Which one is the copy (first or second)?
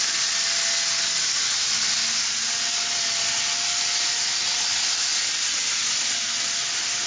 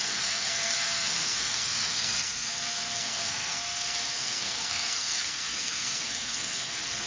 second